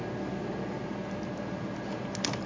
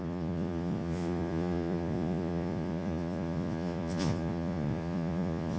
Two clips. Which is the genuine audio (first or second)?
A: first